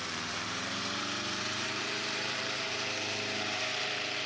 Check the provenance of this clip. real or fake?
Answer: fake